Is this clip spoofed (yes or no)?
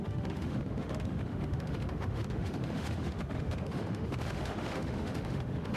yes